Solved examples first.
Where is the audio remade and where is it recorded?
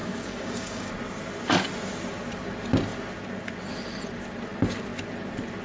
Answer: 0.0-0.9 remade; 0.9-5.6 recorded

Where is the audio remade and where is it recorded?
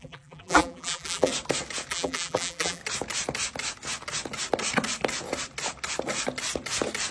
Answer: 0.0-1.3 remade; 1.3-1.9 recorded; 1.9-2.8 remade; 2.8-7.1 recorded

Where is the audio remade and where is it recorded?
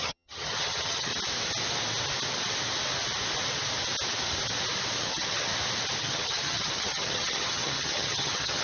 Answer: 0.0-1.1 remade; 1.1-5.0 recorded; 5.0-5.5 remade; 5.5-6.0 recorded; 6.0-8.6 remade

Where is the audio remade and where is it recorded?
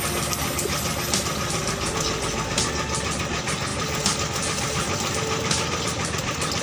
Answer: 0.0-3.7 recorded; 3.7-6.6 remade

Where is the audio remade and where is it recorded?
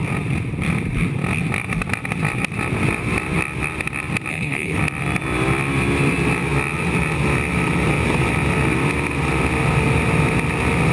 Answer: 0.0-4.3 recorded; 4.3-4.8 remade; 4.8-10.9 recorded